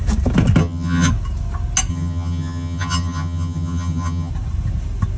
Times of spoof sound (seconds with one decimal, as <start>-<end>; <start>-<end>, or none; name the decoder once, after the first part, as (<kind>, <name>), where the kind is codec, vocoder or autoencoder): 0.6-1.1 (vocoder, HiFi-GAN); 1.9-4.3